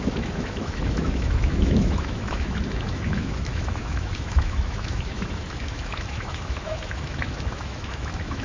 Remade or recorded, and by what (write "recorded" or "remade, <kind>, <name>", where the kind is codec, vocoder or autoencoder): remade, autoencoder, DAC-VAE